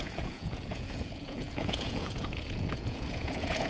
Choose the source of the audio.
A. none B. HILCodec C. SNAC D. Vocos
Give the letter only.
D